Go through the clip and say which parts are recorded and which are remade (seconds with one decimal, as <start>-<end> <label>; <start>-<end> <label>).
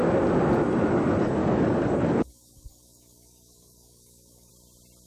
0.0-1.4 recorded; 1.4-4.5 remade; 4.5-5.1 recorded